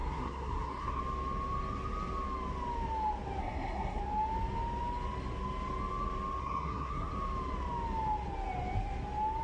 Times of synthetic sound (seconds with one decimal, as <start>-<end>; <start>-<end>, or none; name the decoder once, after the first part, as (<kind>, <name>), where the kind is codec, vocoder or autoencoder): 0.0-1.0 (codec, SNAC); 3.4-4.0; 6.4-7.1